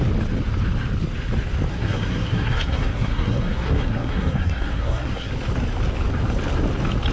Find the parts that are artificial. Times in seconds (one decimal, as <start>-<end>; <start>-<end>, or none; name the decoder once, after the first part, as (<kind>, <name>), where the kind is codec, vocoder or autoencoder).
1.7-5.3 (codec, SNAC)